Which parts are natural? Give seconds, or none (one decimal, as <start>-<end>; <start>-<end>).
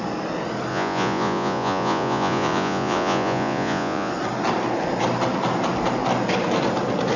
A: 0.0-0.7; 4.1-7.2